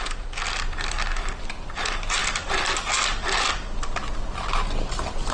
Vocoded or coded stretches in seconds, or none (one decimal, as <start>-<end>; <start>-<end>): none